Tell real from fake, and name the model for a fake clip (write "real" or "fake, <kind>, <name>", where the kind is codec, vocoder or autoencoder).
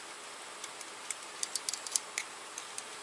real